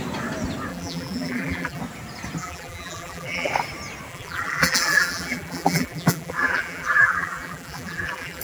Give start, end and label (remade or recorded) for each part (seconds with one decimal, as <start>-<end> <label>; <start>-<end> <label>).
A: 0.0-0.7 recorded; 0.7-1.8 remade; 1.8-2.4 recorded; 2.4-3.5 remade; 3.5-4.1 recorded; 4.1-8.4 remade